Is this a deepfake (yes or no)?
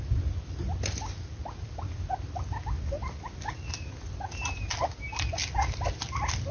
no